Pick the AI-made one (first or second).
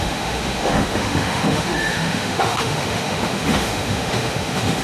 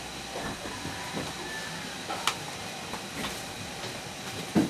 first